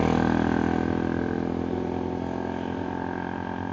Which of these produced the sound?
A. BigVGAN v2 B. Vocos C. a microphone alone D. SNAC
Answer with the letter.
C